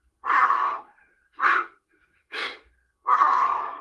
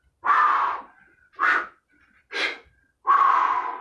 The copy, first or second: first